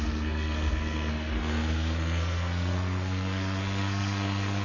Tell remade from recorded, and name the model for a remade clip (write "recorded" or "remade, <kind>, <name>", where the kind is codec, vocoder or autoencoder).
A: remade, codec, SNAC